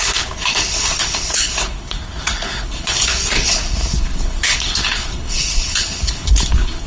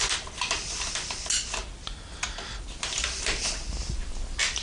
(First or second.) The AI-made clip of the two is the first